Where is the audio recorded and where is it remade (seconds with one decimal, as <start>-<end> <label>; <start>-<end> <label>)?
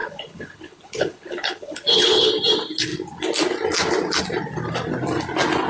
0.0-2.3 remade; 2.3-5.7 recorded